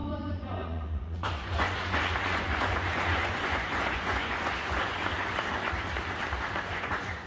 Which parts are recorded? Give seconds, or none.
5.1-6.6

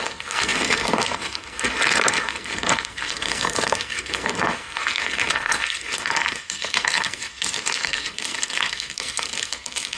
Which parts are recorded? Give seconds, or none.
none

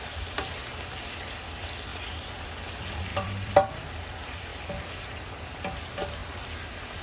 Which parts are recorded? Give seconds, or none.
0.0-1.9; 2.5-3.1; 3.9-7.0